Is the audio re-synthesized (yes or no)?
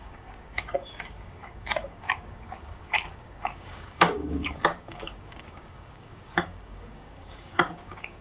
yes